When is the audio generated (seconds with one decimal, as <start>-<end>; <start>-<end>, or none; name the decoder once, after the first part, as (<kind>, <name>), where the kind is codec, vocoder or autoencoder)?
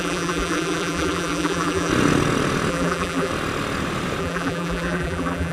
0.0-1.9 (vocoder, BigVGAN v2); 2.7-3.3; 4.2-5.5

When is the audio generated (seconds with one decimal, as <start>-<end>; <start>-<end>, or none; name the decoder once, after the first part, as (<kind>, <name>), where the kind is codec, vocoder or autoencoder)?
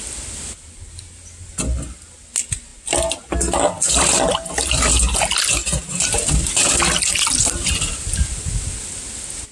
none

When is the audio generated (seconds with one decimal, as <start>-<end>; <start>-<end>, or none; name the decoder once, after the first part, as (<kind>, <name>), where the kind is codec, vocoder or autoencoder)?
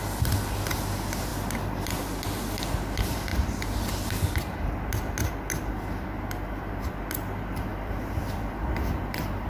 7.7-9.5 (vocoder, BigVGAN v2)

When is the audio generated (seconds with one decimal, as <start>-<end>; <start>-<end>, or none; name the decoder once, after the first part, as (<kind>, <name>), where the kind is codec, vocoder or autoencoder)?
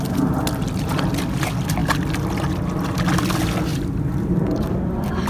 3.7-4.8 (vocoder, BigVGAN v2)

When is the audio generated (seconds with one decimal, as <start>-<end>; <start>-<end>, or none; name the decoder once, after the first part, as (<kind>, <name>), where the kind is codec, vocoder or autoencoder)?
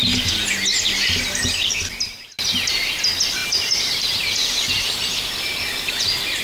3.4-5.2 (vocoder, BigVGAN v2)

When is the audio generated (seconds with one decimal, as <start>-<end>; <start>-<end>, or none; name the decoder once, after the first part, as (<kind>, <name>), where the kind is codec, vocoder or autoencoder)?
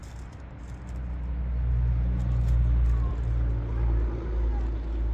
none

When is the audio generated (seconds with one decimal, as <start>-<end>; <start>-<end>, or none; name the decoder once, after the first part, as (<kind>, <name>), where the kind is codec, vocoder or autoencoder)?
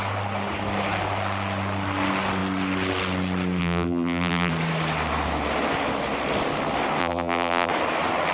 3.6-4.5 (vocoder, BigVGAN v2); 7.0-7.7